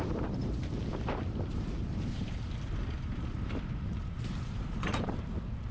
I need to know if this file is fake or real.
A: fake